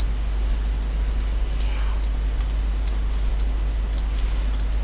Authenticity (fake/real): real